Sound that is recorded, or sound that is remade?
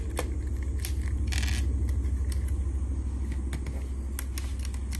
recorded